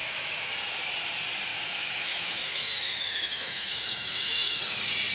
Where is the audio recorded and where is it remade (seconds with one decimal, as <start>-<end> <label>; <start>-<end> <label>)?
0.0-0.5 remade; 0.5-1.5 recorded; 1.5-4.6 remade; 4.6-5.1 recorded